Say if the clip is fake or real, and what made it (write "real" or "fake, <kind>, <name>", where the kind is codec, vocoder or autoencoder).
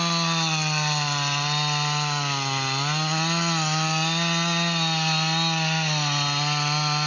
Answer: real